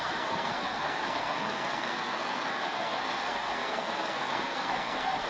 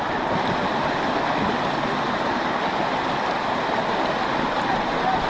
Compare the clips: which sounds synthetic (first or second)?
first